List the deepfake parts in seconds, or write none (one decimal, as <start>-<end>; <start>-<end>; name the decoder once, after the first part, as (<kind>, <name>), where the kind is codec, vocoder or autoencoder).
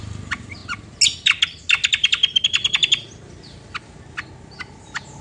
none